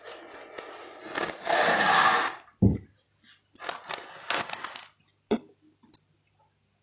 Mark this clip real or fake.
real